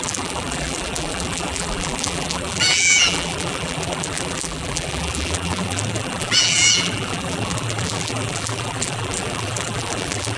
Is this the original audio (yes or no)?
no